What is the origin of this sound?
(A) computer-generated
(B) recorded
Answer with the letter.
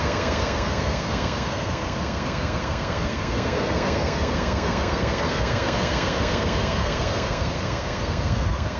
A